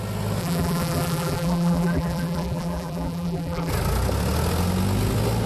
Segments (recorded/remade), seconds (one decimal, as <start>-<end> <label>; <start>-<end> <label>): 0.0-0.4 recorded; 0.4-3.7 remade; 3.7-5.5 recorded